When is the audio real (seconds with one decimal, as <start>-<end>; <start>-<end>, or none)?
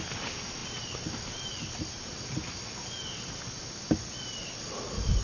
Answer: 0.0-5.2